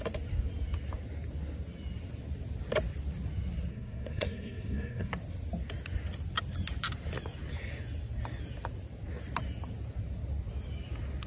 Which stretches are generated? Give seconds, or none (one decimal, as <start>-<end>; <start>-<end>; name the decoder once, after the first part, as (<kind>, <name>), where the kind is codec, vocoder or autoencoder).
3.7-5.1 (codec, SNAC)